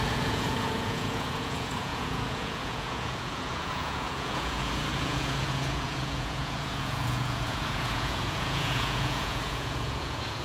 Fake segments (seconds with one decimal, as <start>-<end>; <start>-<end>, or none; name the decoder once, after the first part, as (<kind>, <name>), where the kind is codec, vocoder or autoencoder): 0.0-10.4 (vocoder, Vocos)